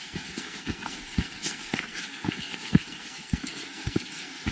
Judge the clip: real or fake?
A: fake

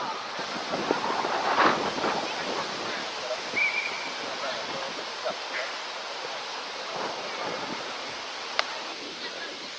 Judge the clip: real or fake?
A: real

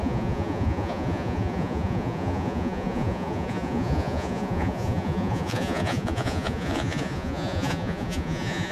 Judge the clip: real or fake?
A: fake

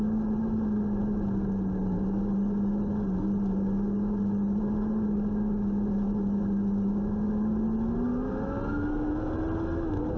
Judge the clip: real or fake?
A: real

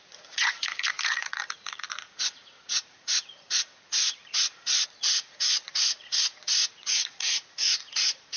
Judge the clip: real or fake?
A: fake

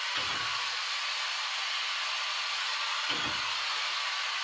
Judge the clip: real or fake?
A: real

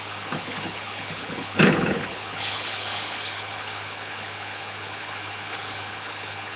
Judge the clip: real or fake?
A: fake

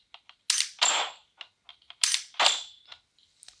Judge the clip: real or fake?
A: real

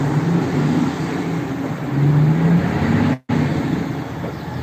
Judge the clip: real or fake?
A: real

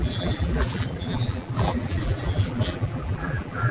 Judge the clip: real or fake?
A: fake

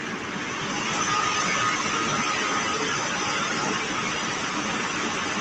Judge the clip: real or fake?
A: real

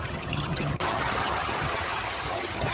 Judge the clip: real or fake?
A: fake